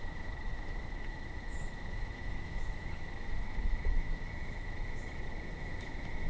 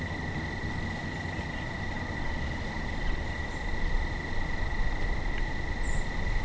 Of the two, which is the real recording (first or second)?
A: second